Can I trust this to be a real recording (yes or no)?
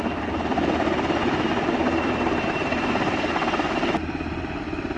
yes